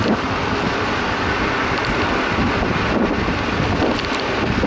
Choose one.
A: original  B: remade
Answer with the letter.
B